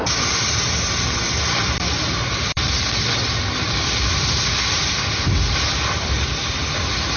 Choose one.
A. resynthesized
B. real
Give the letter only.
A